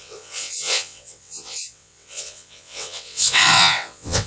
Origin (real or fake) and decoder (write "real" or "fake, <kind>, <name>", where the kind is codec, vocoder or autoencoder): fake, vocoder, WaveNeXt